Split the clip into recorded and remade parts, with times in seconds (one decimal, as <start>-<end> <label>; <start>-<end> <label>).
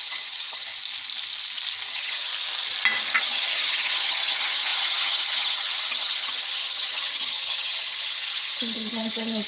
0.0-0.7 remade; 0.7-1.9 recorded; 1.9-2.3 remade; 2.3-3.2 recorded; 3.2-9.5 remade